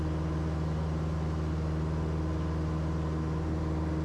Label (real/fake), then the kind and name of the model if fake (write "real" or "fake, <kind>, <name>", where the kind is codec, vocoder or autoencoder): real